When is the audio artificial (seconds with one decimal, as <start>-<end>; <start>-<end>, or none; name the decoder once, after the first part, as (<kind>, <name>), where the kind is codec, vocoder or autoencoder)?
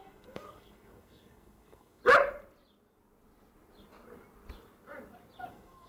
0.0-2.0 (codec, SNAC); 5.5-5.9